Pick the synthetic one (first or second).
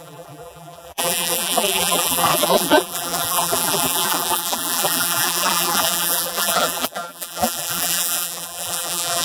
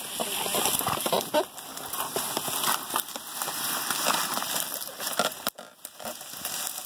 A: first